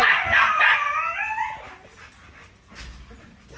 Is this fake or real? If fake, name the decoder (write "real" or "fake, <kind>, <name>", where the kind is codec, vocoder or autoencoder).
real